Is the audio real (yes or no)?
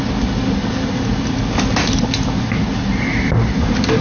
yes